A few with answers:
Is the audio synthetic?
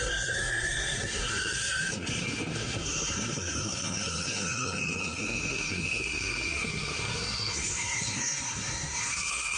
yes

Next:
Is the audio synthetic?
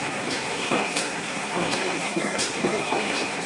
yes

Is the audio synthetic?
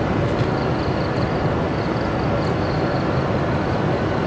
no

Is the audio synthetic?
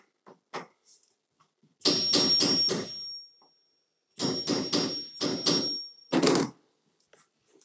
no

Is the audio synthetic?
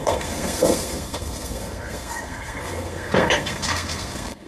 yes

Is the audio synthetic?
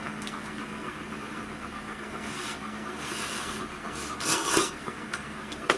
yes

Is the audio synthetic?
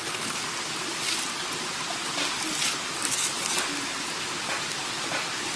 no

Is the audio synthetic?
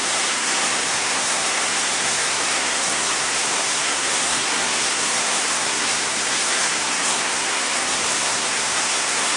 yes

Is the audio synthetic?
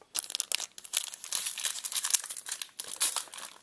no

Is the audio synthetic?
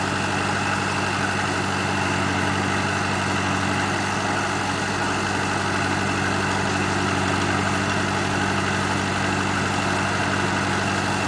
no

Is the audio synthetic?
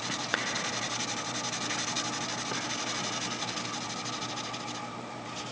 no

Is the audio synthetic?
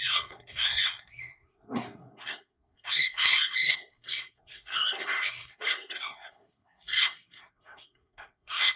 yes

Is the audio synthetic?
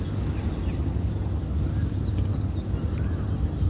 no